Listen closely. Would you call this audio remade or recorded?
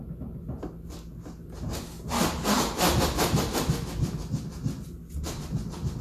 recorded